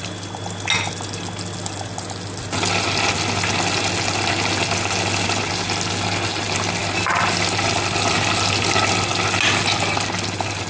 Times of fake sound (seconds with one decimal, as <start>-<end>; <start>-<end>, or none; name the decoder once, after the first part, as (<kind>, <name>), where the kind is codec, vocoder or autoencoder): none

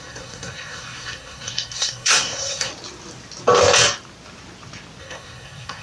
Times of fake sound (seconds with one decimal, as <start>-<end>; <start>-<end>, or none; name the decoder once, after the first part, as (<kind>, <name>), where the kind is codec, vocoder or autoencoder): 0.0-2.7 (codec, SNAC); 5.0-5.8

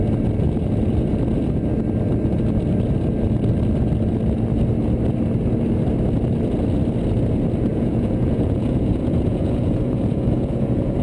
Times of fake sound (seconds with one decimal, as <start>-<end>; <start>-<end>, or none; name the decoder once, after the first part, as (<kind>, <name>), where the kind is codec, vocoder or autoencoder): 7.7-11.0 (vocoder, Vocos)

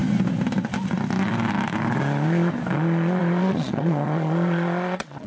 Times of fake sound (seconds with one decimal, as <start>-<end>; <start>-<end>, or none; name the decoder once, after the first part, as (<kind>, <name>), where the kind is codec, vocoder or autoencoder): 3.2-5.3 (vocoder, Vocos)